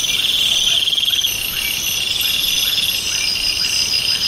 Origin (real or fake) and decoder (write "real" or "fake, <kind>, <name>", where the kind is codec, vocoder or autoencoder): real